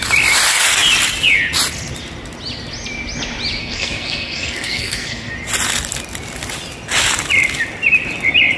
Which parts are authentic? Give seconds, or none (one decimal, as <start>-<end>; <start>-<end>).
0.0-3.6; 5.3-8.6